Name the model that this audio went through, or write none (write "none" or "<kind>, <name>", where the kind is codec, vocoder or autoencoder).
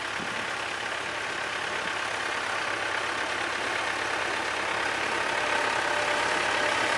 none